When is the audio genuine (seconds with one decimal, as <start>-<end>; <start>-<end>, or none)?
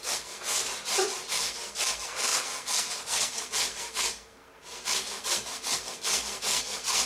0.7-1.3